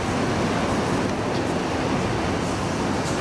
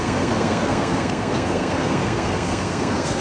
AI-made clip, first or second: second